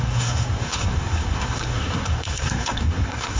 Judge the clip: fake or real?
fake